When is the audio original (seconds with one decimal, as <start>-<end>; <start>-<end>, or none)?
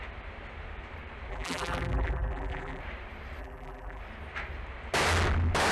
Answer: 0.0-1.3; 2.8-3.4; 4.0-5.7